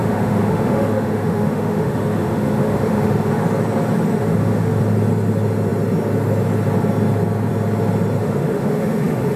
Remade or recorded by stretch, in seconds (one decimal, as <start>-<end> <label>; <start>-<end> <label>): 0.0-3.3 remade; 3.3-4.2 recorded; 4.2-4.8 remade; 4.8-8.2 recorded; 8.2-9.4 remade